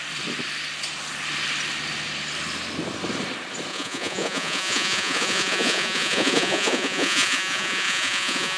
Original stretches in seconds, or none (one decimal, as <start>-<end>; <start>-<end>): 0.0-3.7